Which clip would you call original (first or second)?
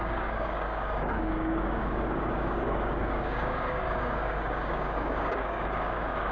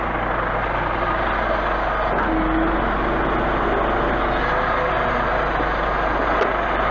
second